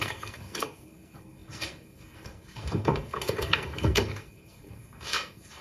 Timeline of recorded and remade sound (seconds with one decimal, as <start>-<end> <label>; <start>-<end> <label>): 0.0-5.6 remade

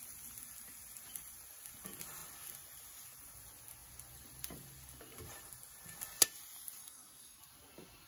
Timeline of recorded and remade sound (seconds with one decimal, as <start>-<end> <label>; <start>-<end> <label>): 0.0-6.8 recorded; 6.8-7.4 remade; 7.4-8.1 recorded

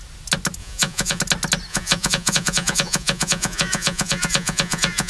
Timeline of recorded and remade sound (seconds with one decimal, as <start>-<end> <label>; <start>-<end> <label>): 0.0-0.6 recorded; 0.6-1.2 remade; 1.2-1.7 recorded; 1.7-5.1 remade

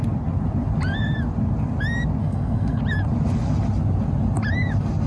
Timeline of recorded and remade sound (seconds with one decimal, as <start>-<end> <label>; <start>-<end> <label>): 0.0-2.2 recorded; 2.2-2.8 remade; 2.8-5.1 recorded

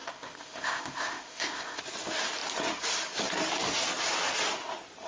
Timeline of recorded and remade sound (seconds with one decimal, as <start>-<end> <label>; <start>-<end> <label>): 0.0-1.8 remade; 1.8-5.1 recorded

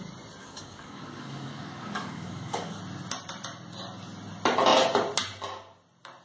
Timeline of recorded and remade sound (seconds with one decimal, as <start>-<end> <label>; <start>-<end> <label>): 0.0-0.4 recorded; 0.4-2.8 remade; 2.8-6.2 recorded